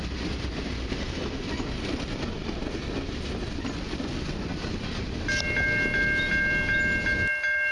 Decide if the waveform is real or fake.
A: real